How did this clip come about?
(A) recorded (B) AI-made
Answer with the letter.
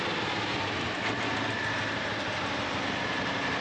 A